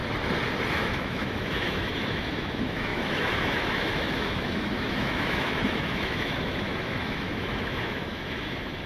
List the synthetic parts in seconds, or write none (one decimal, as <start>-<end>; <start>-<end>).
0.7-8.9